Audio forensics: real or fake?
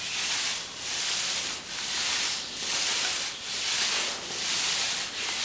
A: real